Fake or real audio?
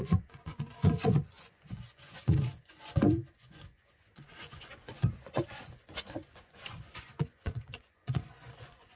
fake